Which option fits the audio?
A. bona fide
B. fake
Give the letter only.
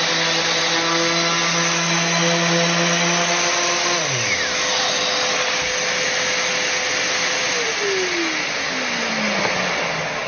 A